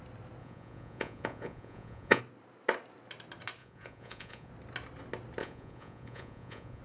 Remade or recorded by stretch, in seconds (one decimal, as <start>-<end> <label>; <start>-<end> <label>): 0.0-0.4 recorded; 0.4-2.2 remade; 2.2-3.6 recorded; 3.6-4.5 remade; 4.5-5.4 recorded; 5.4-6.8 remade